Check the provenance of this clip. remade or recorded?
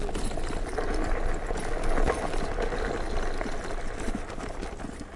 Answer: recorded